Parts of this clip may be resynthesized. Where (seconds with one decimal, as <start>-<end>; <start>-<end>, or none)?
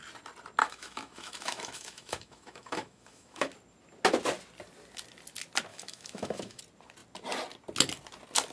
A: 0.6-3.5; 5.7-6.6